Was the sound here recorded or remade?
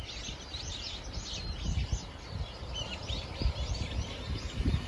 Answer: recorded